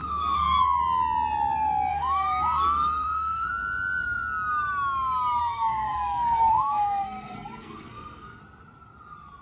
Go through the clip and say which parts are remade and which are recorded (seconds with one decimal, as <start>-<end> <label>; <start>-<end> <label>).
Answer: 0.0-0.8 remade; 0.8-1.9 recorded; 1.9-3.5 remade; 3.5-5.4 recorded; 5.4-8.4 remade; 8.4-9.4 recorded